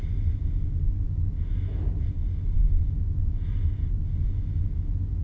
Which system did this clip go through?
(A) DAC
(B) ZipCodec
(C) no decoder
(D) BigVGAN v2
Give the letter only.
C